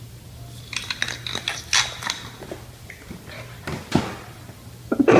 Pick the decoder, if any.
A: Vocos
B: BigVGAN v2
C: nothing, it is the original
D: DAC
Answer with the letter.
C